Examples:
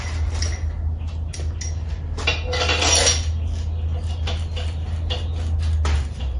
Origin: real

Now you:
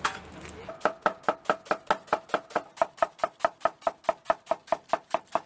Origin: real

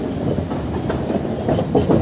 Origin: real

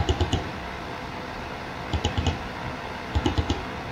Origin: real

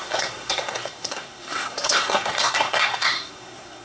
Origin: fake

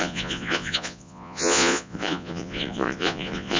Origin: fake